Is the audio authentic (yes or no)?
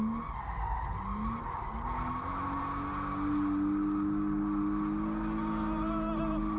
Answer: yes